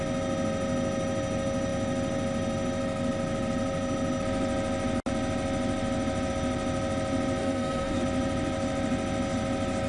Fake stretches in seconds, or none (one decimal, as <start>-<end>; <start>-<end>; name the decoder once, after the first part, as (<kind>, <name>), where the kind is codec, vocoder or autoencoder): 7.4-8.0 (codec, SNAC)